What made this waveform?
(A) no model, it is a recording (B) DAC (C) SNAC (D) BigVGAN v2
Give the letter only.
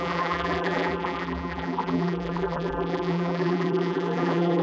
D